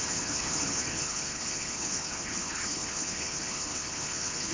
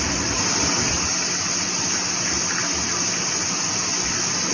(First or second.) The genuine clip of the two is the second